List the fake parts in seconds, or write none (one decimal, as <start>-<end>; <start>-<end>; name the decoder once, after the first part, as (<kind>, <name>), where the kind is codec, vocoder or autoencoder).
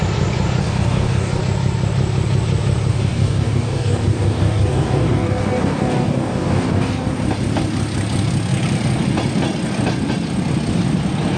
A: 0.6-1.4 (codec, DAC); 2.9-6.9